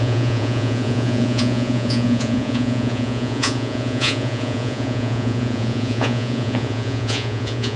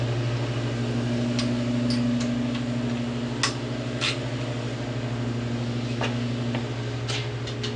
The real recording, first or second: second